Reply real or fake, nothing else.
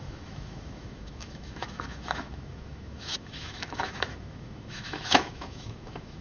fake